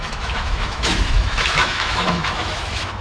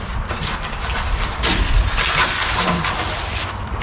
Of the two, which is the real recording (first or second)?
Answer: second